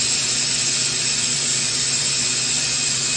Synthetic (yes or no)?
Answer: yes